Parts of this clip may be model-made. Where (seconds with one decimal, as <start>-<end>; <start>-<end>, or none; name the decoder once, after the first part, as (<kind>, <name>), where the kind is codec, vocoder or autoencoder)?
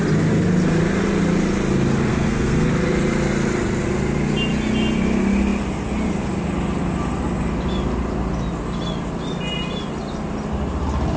2.1-2.7 (codec, SNAC)